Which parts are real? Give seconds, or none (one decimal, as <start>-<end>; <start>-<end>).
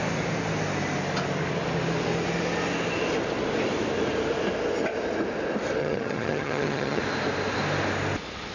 0.0-5.8; 7.0-8.5